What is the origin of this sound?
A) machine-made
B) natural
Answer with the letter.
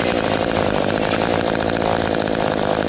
B